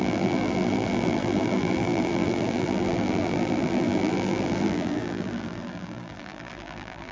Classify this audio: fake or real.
fake